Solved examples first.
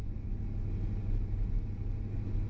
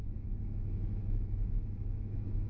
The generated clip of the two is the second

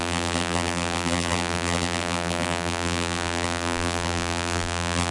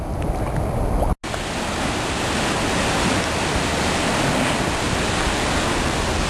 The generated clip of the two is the first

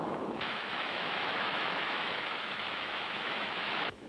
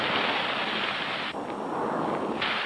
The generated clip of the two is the first